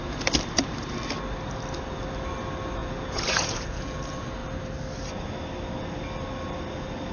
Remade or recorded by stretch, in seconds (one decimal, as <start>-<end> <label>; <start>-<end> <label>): 0.0-2.8 recorded; 2.8-4.0 remade; 4.0-7.1 recorded